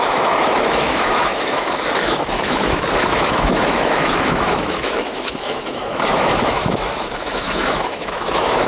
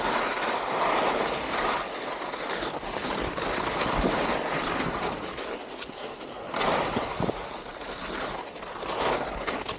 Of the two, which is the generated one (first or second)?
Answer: first